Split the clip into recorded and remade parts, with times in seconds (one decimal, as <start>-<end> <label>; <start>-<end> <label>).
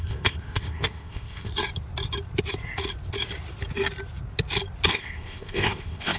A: 0.0-1.5 remade; 1.5-4.9 recorded; 4.9-6.2 remade